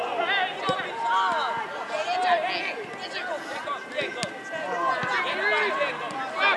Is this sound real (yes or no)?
yes